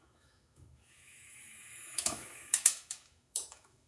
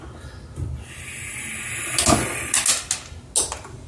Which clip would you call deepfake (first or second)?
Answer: first